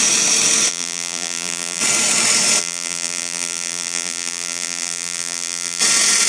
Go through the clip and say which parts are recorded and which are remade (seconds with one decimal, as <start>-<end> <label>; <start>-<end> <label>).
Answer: 0.0-0.7 recorded; 0.7-1.8 remade; 1.8-2.6 recorded; 2.6-5.8 remade; 5.8-6.3 recorded